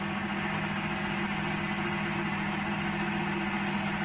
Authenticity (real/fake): real